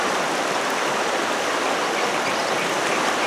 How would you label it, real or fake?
real